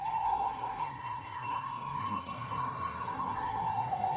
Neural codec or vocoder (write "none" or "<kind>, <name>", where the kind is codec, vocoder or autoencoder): codec, SNAC